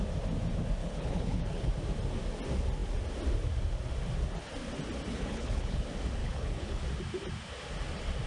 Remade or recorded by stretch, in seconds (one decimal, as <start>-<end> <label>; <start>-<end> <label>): 0.0-0.8 recorded; 0.8-1.7 remade; 1.7-5.1 recorded; 5.1-5.8 remade; 5.8-6.2 recorded; 6.2-6.8 remade; 6.8-8.3 recorded